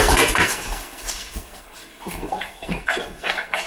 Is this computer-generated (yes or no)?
yes